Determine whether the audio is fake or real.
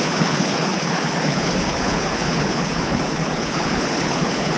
fake